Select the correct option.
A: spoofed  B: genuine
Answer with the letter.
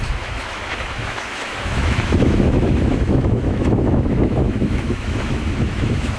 A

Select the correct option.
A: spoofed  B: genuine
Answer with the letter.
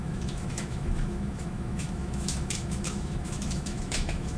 A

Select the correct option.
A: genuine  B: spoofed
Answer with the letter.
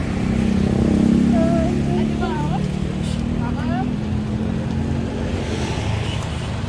A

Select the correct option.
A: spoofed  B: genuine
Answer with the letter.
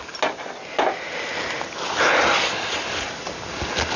B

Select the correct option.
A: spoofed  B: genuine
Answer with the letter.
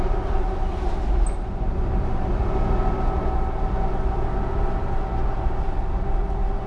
B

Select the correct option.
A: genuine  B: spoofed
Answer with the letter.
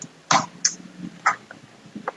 A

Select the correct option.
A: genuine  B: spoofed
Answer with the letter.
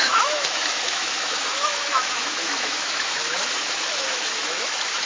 B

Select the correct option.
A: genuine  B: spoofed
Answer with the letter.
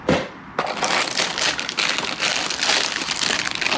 A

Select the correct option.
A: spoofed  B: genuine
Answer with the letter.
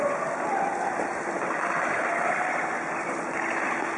B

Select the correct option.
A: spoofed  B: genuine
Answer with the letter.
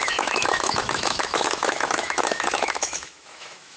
A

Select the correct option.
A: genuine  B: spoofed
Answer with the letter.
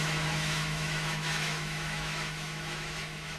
B